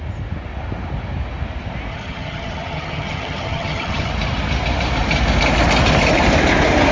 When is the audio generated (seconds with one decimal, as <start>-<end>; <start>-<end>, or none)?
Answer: 1.9-4.1